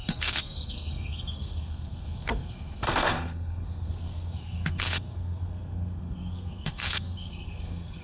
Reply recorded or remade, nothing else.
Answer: remade